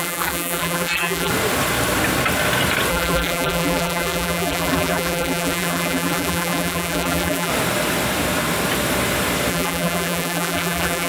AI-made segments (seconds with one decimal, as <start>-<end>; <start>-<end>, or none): 0.0-1.3; 2.9-7.5; 9.5-11.1